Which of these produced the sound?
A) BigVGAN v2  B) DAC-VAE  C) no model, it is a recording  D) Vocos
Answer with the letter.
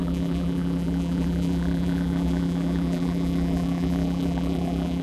A